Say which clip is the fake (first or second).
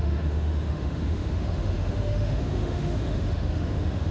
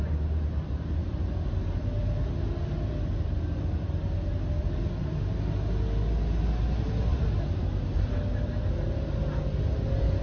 first